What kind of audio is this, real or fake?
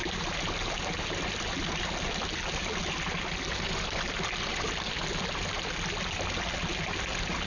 real